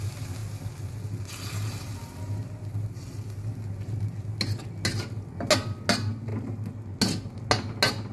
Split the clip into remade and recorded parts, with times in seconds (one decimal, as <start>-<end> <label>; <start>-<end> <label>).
0.0-8.1 recorded